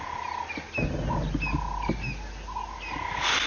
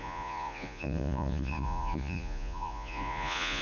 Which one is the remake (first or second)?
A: second